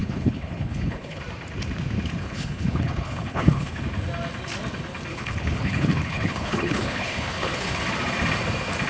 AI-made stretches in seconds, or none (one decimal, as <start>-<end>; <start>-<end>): 0.0-1.2; 2.2-3.8; 5.1-7.8